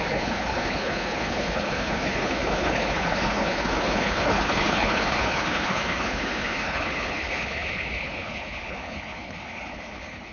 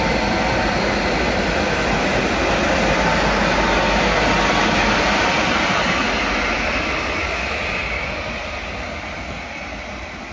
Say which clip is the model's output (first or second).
first